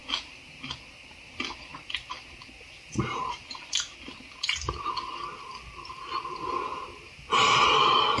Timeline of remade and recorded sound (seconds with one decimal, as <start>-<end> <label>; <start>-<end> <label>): 0.0-8.2 recorded